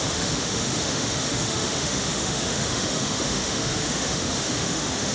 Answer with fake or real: fake